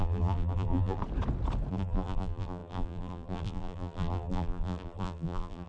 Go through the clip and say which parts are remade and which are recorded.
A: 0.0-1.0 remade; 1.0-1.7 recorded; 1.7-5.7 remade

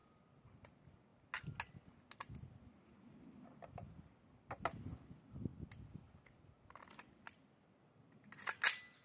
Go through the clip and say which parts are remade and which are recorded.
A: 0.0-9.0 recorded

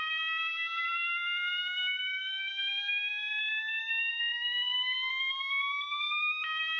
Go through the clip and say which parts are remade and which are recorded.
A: 0.0-6.8 recorded